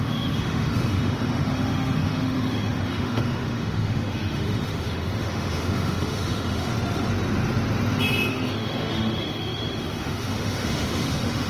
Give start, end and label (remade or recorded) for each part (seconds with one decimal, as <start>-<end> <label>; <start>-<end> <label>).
0.0-6.7 remade; 6.7-8.3 recorded; 8.3-11.5 remade